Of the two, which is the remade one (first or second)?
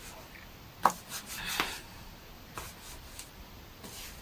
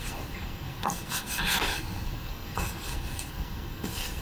second